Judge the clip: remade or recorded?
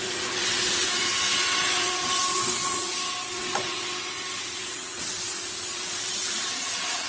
remade